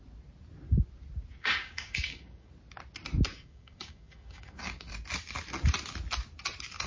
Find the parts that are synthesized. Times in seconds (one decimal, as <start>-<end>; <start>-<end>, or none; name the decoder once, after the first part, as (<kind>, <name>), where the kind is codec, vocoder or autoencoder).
1.4-2.5 (codec, DAC); 3.3-4.9